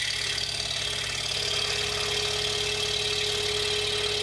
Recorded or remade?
recorded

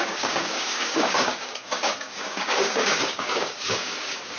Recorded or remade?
remade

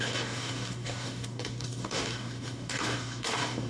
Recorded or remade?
remade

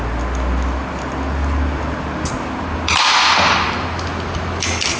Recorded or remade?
recorded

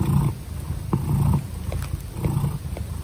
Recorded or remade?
recorded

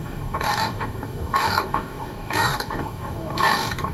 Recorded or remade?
remade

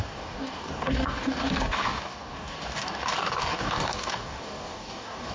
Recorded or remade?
remade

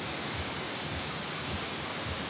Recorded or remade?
remade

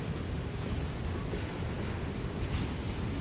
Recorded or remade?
recorded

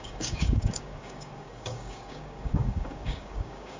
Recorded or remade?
remade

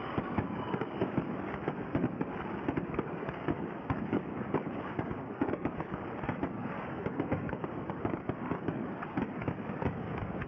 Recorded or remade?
remade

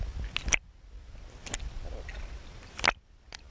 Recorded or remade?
recorded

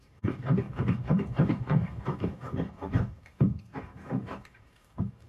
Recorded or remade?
remade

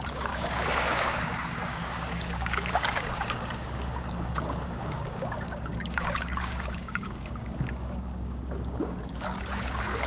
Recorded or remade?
remade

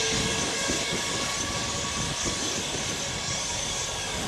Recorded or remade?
remade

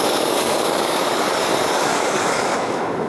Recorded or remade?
remade